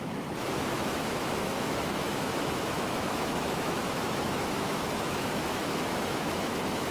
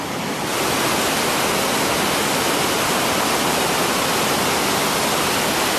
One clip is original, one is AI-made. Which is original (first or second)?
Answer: second